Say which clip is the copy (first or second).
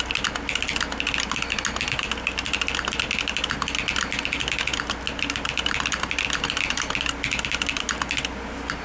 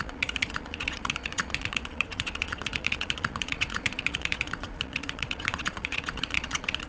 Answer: second